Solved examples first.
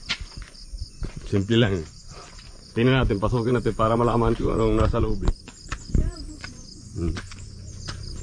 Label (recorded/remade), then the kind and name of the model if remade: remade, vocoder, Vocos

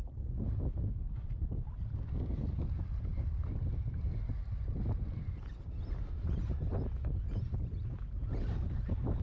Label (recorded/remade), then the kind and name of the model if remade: recorded